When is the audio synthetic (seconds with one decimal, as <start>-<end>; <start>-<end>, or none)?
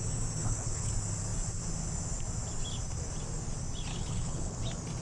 0.4-0.9; 3.9-4.6